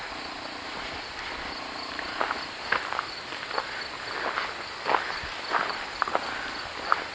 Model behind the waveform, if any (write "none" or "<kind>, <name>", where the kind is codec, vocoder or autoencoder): none